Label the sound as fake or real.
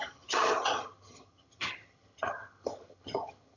fake